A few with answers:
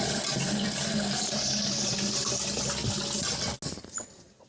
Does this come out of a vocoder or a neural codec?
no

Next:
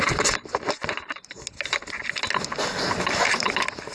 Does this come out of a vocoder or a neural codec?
no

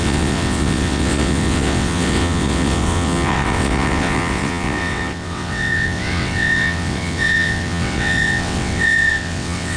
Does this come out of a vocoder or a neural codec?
yes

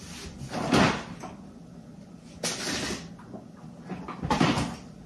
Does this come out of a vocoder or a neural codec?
no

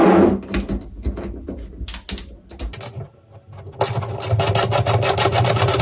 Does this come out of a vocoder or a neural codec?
no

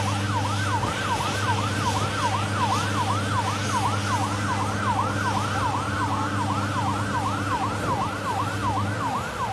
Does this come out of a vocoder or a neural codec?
no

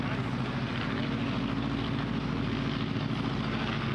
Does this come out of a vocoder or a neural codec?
no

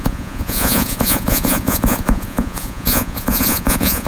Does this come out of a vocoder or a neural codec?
yes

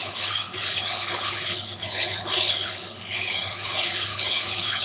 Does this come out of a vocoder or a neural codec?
yes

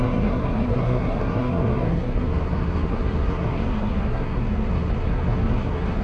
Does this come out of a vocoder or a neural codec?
yes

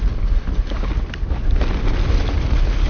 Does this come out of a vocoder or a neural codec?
no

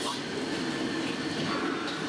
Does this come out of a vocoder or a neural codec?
no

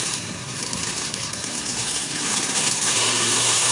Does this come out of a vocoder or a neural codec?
yes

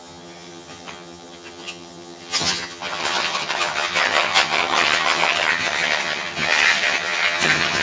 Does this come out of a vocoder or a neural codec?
yes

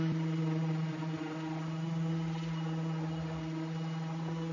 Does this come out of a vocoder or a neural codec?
no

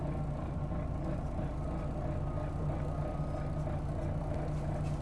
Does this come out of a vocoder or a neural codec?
no